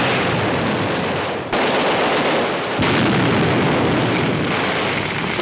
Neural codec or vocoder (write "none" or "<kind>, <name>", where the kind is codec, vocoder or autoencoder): none